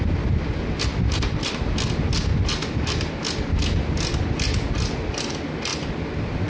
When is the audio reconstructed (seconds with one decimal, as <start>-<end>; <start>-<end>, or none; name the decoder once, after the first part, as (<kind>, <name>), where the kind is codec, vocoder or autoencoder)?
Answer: none